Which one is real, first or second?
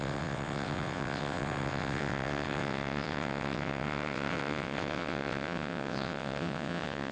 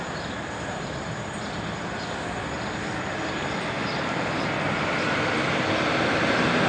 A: second